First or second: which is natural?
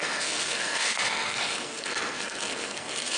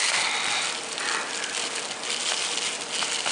second